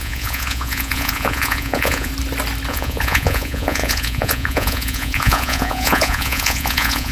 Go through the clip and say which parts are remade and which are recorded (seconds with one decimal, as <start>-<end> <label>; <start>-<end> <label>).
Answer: 0.0-2.1 remade; 2.1-2.7 recorded; 2.7-7.1 remade